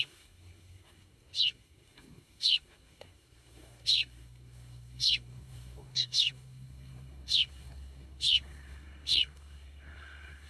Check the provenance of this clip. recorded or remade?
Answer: remade